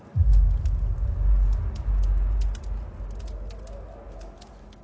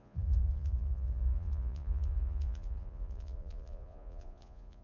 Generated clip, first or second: second